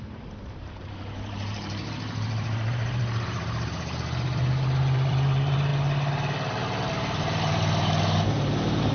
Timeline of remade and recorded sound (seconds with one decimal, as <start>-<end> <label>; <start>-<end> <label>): 0.0-5.7 remade; 5.7-7.2 recorded; 7.2-8.9 remade